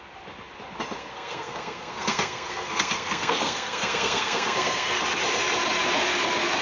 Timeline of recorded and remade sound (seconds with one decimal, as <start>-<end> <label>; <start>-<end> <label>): 0.0-1.0 recorded; 1.0-5.0 remade; 5.0-6.6 recorded